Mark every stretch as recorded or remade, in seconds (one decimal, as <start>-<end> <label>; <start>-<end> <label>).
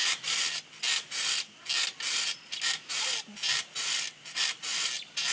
0.0-5.3 recorded